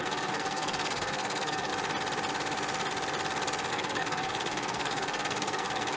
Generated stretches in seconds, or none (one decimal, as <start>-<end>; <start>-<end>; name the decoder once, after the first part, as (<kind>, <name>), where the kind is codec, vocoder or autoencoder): 0.0-1.7 (codec, SNAC); 3.7-6.0